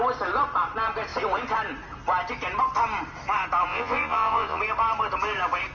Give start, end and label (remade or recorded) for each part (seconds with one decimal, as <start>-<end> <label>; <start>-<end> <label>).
0.0-3.7 recorded; 3.7-4.6 remade; 4.6-5.7 recorded